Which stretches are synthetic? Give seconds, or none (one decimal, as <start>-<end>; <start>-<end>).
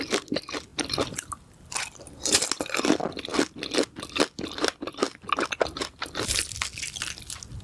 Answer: none